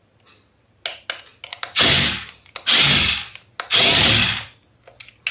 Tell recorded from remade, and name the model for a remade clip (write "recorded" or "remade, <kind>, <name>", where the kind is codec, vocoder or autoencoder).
recorded